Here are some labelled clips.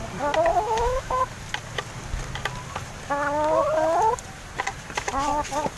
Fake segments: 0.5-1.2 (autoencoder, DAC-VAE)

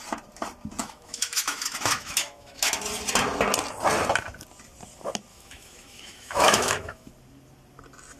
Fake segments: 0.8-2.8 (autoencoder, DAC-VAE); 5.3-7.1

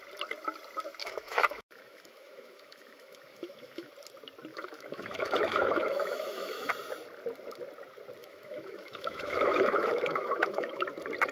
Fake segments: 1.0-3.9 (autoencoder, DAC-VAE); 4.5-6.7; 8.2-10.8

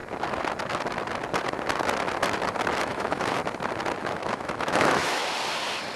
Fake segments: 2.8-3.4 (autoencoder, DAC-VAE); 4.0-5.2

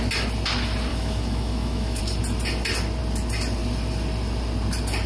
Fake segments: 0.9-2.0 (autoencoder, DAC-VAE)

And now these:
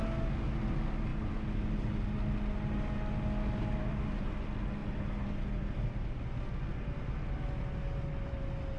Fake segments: none

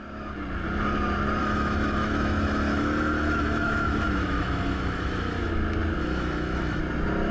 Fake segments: 1.4-5.5 (autoencoder, DAC-VAE); 6.0-6.8